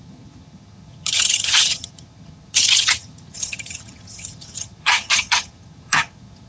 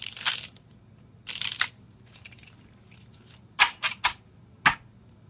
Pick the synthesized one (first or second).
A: first